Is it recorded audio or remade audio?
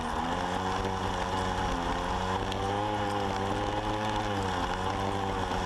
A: recorded